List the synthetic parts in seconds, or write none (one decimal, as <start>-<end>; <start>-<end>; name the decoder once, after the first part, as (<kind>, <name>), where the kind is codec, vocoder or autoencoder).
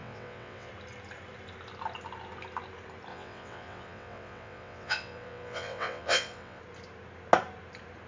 0.0-0.7 (vocoder, WaveNeXt); 3.1-6.6